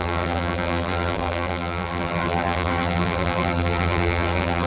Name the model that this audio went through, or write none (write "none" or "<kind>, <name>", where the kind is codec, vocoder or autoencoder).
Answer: vocoder, BigVGAN v2